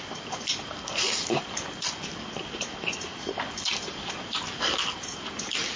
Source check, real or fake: real